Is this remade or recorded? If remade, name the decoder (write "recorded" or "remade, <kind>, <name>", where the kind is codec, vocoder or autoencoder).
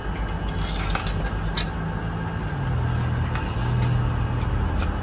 recorded